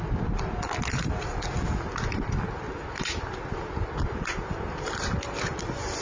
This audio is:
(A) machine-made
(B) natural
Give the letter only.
B